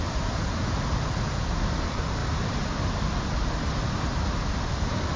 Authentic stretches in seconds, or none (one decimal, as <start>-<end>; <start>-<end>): 0.0-5.2